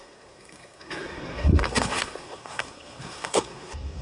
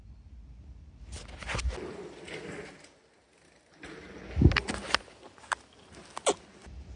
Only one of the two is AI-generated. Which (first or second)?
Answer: first